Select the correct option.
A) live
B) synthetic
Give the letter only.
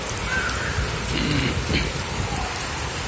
A